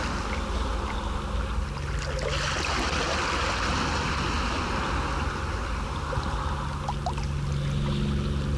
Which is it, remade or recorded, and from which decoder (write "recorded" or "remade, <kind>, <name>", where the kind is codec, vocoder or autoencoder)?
recorded